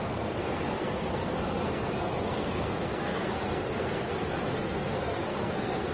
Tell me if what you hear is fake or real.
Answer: fake